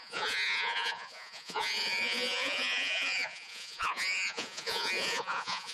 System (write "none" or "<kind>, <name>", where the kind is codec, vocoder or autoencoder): vocoder, Vocos